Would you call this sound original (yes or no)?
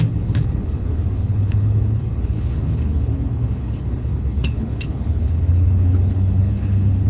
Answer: no